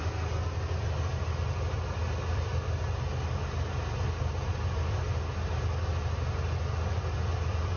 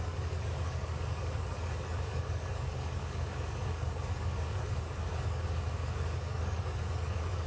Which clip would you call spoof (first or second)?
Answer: second